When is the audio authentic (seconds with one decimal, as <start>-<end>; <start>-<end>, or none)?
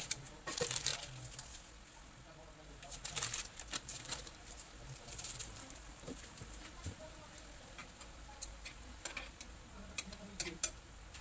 0.9-2.7